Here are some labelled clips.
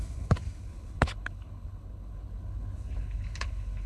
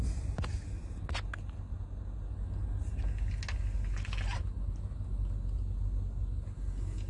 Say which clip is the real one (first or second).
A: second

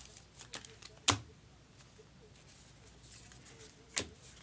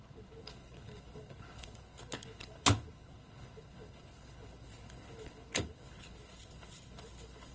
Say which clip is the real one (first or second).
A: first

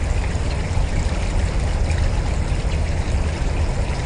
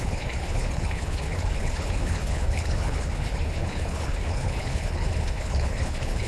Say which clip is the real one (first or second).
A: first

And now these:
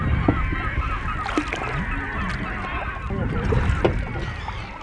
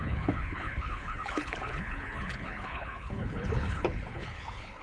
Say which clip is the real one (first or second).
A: first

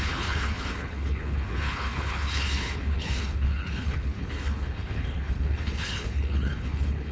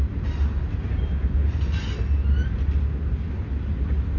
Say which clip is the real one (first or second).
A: second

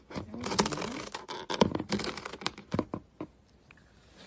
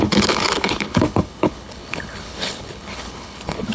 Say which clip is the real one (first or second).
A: first